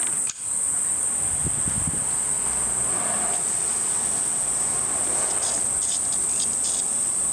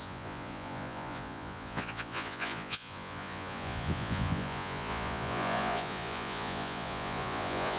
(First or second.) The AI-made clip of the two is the second